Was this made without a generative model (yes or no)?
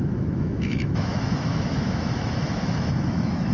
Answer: no